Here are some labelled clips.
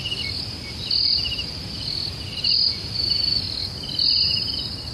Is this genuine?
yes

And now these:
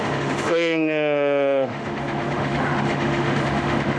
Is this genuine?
no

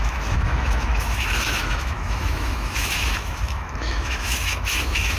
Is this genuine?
no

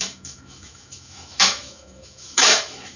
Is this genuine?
no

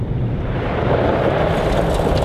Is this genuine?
yes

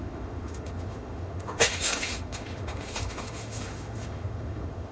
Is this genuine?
no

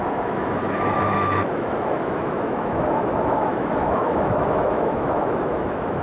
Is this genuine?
no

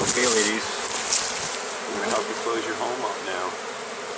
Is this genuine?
yes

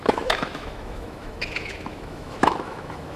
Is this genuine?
no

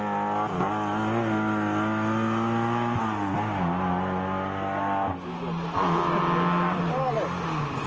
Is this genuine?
yes